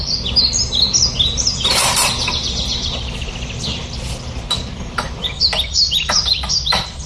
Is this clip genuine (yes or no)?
yes